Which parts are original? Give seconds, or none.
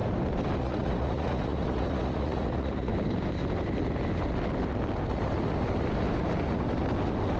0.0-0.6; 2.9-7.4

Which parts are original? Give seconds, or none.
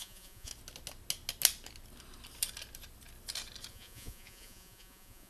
0.5-3.7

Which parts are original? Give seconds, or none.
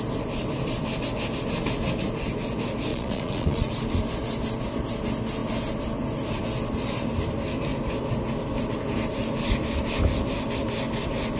0.0-2.9; 3.7-11.4